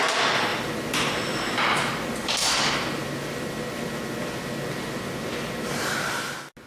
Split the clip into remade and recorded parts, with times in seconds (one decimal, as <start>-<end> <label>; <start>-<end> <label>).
0.0-0.5 recorded; 0.5-1.1 remade; 1.1-6.7 recorded

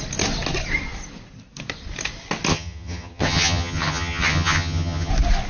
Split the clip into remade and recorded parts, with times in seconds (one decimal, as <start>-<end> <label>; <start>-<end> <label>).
0.0-2.5 recorded; 2.5-5.1 remade; 5.1-5.5 recorded